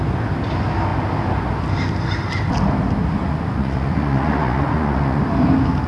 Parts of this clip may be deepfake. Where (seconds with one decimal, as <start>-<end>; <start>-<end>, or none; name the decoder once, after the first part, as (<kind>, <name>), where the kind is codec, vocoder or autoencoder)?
3.2-5.2 (vocoder, Vocos)